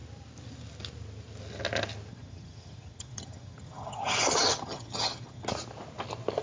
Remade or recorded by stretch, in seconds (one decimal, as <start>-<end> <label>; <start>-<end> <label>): 0.0-2.1 recorded; 2.1-5.5 remade; 5.5-6.4 recorded